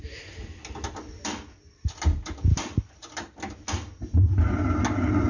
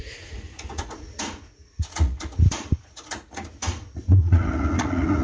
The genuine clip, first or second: first